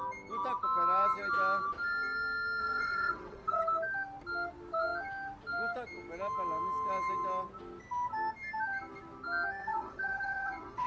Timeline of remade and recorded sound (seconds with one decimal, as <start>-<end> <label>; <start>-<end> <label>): 0.0-2.6 recorded; 2.6-3.6 remade; 3.6-9.6 recorded; 9.6-10.9 remade